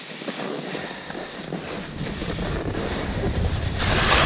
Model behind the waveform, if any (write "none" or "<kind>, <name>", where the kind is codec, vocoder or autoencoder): none